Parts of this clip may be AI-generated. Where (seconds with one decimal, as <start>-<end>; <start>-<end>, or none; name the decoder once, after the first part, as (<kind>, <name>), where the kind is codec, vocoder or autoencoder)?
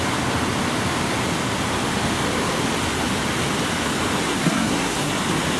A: 4.3-5.1 (codec, SNAC)